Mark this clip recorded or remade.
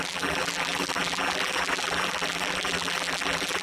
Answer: remade